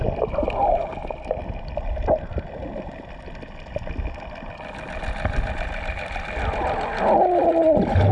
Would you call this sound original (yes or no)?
yes